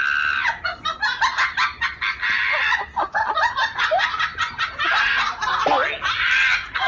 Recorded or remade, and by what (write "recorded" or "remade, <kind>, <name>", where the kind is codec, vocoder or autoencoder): recorded